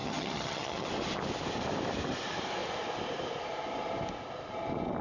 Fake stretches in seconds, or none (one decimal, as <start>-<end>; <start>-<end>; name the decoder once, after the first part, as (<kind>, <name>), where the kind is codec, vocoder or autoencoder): 0.0-0.9 (vocoder, HiFi-GAN)